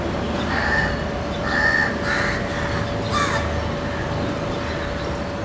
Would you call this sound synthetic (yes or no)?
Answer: no